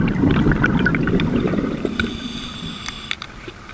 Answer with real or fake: real